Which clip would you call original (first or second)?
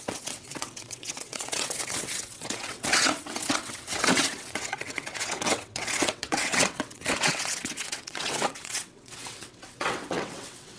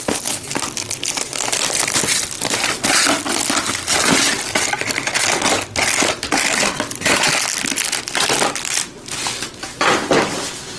second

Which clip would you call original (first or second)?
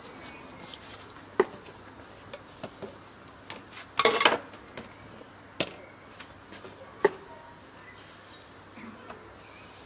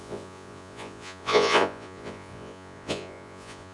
first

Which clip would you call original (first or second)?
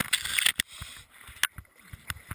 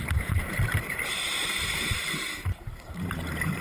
first